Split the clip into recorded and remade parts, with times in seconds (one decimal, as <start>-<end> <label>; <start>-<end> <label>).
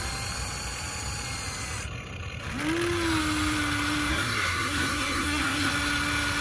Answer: 0.0-4.1 recorded; 4.1-5.7 remade; 5.7-6.4 recorded